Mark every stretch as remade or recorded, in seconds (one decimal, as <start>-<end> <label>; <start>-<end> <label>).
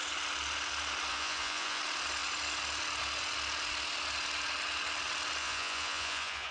0.0-1.1 recorded; 1.1-1.8 remade; 1.8-5.4 recorded; 5.4-6.5 remade